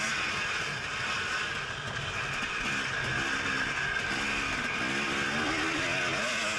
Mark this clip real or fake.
real